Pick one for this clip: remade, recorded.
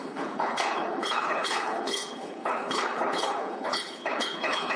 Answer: remade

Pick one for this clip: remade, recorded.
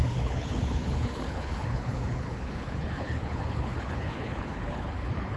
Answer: remade